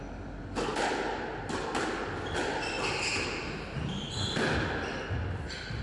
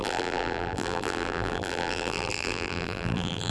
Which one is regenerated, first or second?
second